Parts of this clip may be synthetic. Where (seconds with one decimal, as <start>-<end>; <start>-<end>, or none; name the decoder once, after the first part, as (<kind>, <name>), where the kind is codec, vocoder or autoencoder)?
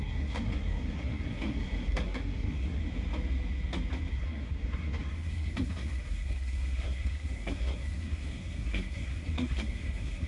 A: 0.0-2.8 (codec, SNAC); 4.1-10.3